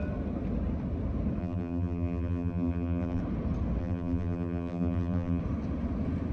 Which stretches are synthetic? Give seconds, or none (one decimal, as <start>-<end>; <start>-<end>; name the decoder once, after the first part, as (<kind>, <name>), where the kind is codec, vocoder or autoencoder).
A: 1.4-3.2 (vocoder, BigVGAN v2); 3.8-5.4

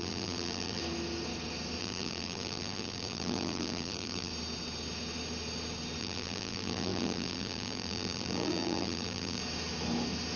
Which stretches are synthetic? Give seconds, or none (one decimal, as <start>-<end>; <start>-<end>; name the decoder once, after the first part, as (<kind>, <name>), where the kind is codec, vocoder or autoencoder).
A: 0.0-0.8 (vocoder, BigVGAN v2); 1.8-4.3; 6.0-9.4